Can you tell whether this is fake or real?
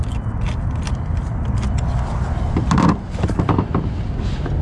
real